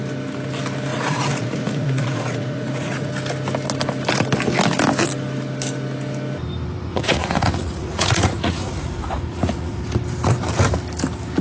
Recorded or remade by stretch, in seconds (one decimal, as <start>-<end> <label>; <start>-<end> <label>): 0.0-0.9 recorded; 0.9-3.1 remade; 3.1-6.9 recorded; 6.9-9.8 remade; 9.8-11.4 recorded